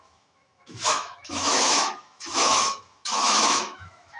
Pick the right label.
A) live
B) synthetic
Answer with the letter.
B